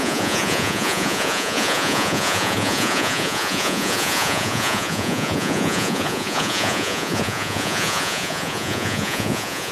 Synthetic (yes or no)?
yes